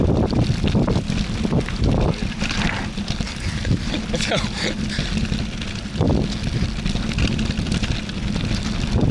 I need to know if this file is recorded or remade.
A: recorded